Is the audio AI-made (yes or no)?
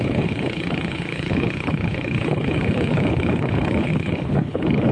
yes